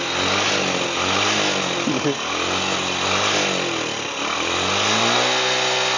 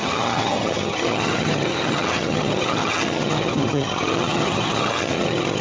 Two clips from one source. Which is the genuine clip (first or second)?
first